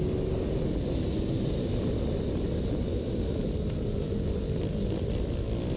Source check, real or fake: real